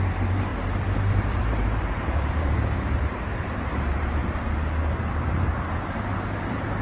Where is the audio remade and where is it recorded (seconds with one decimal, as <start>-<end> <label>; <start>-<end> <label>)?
0.0-4.2 remade; 4.2-5.1 recorded; 5.1-6.8 remade